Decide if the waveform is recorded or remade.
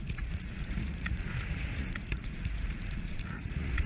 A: remade